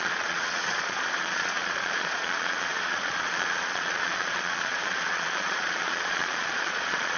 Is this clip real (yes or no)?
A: no